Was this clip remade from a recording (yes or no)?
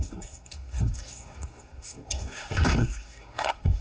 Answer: yes